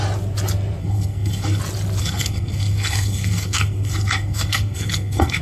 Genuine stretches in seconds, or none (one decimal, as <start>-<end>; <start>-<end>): 0.0-0.8; 1.6-2.0

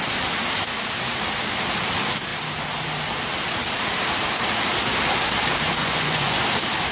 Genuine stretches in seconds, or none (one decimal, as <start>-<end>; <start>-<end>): 0.0-5.8; 6.4-6.9

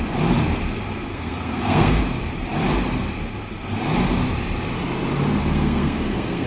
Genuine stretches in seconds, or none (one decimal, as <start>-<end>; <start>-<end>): 0.0-1.1; 2.0-5.4

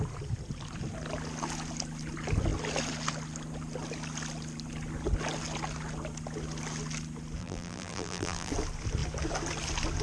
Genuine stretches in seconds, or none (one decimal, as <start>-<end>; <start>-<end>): 0.0-7.4; 8.5-10.0

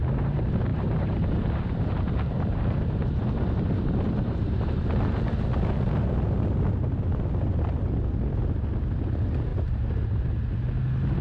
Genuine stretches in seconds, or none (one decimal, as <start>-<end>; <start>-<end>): 0.0-0.7; 5.3-9.5; 10.2-11.2